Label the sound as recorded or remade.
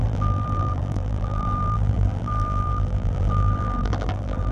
remade